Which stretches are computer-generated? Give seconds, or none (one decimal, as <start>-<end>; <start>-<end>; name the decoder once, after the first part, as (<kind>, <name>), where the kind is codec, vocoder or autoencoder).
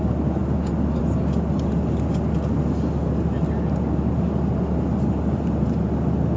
none